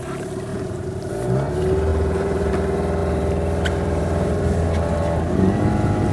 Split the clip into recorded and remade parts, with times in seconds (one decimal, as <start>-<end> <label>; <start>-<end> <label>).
0.0-0.5 recorded; 0.5-1.1 remade; 1.1-1.9 recorded; 1.9-2.5 remade; 2.5-3.0 recorded; 3.0-5.6 remade; 5.6-6.1 recorded